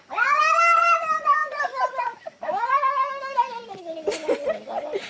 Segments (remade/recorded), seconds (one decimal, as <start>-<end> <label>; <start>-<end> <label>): 0.0-5.1 recorded

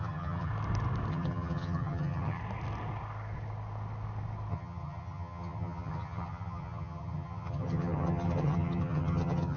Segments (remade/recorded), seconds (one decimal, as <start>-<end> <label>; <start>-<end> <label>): 0.0-0.5 remade; 0.5-1.1 recorded; 1.1-2.4 remade; 2.4-4.5 recorded; 4.5-9.6 remade

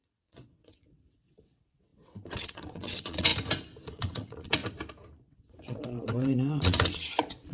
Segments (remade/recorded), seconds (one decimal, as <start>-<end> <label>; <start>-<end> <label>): 0.0-3.3 remade; 3.3-3.9 recorded; 3.9-4.6 remade; 4.6-5.2 recorded; 5.2-7.5 remade

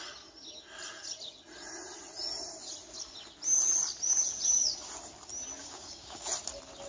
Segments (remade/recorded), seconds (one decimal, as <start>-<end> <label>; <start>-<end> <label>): 0.0-5.6 recorded; 5.6-6.3 remade; 6.3-6.9 recorded

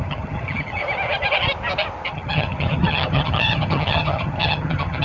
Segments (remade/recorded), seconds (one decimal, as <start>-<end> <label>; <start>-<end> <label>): 0.0-0.8 remade; 0.8-2.1 recorded; 2.1-5.0 remade